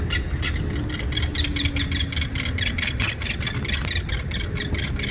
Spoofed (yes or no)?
no